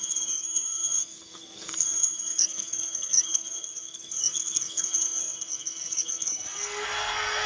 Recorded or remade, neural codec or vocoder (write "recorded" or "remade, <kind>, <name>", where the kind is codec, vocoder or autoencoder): remade, codec, SNAC